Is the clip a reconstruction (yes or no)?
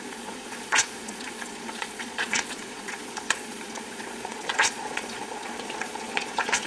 yes